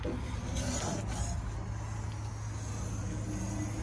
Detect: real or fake real